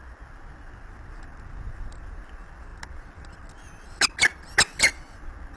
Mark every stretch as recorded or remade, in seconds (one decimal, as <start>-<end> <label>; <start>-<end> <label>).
0.0-5.6 recorded